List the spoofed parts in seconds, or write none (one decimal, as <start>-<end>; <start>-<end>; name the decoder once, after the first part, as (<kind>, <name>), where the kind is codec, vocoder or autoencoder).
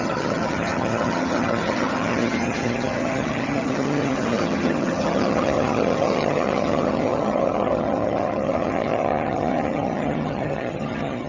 0.0-11.3 (vocoder, HiFi-GAN)